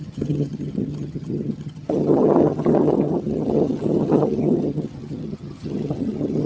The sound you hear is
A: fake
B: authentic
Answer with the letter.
A